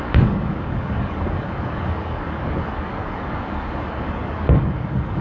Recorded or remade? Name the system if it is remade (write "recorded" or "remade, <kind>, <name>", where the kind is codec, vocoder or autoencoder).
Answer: remade, codec, DAC